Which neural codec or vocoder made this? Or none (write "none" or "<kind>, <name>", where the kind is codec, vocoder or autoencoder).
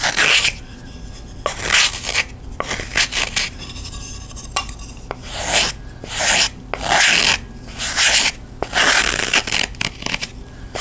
none